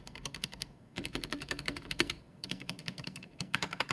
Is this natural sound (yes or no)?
no